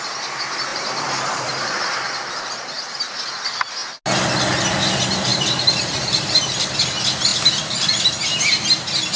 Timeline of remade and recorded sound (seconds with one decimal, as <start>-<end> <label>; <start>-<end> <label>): 0.0-0.7 recorded; 0.7-3.3 remade; 3.3-5.3 recorded; 5.3-6.8 remade; 6.8-7.3 recorded; 7.3-8.0 remade; 8.0-9.2 recorded